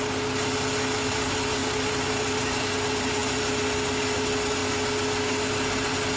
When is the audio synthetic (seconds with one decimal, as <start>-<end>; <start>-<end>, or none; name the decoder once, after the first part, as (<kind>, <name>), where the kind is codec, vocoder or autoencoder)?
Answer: none